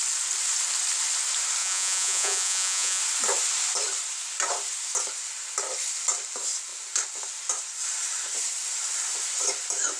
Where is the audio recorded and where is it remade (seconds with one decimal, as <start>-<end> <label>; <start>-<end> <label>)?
0.0-1.6 recorded; 1.6-3.0 remade; 3.0-10.0 recorded